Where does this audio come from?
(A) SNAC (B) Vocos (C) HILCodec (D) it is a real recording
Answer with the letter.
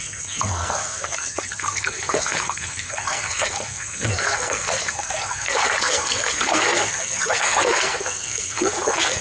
A